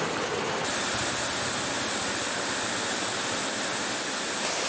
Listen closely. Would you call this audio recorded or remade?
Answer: recorded